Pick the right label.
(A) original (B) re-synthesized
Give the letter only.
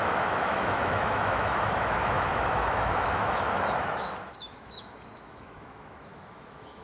B